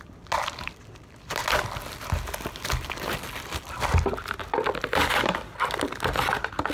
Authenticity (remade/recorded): recorded